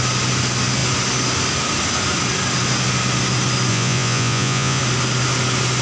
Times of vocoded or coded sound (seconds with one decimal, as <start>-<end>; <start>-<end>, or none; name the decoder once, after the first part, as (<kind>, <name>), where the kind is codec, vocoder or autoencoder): 3.7-4.8 (vocoder, Vocos)